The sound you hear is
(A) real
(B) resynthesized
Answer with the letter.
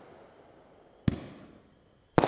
A